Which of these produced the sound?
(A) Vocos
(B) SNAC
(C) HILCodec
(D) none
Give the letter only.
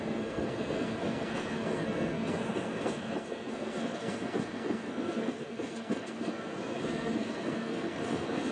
B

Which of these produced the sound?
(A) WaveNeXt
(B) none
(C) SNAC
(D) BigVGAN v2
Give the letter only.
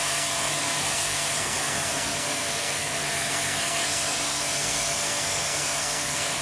C